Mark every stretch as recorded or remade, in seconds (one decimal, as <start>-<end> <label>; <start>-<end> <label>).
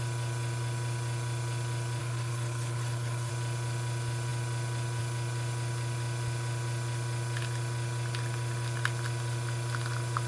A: 0.0-2.0 recorded; 2.0-3.3 remade; 3.3-10.3 recorded